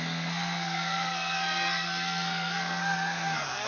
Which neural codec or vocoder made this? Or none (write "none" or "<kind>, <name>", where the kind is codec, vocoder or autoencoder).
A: codec, SNAC